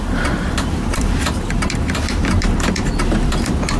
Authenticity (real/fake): fake